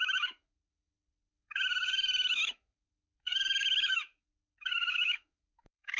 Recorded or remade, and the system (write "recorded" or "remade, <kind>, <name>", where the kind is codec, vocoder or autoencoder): remade, autoencoder, DAC-VAE